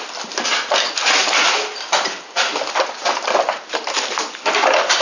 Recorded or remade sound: recorded